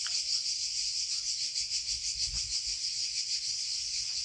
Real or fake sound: real